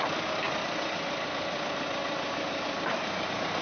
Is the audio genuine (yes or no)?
yes